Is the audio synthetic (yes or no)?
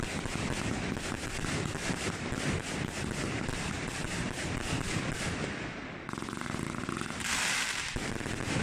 yes